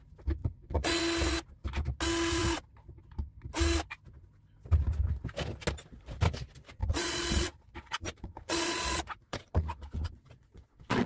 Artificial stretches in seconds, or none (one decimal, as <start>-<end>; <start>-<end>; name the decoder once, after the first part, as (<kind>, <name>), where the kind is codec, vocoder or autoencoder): 0.4-1.0 (vocoder, Vocos); 6.8-11.1